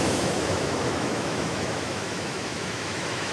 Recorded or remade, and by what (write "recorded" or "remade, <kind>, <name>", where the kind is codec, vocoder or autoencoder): remade, autoencoder, DAC-VAE